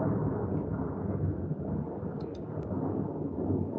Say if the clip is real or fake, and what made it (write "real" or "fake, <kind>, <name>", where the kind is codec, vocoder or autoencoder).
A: real